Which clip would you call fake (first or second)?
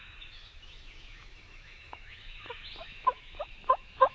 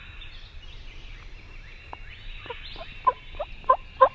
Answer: first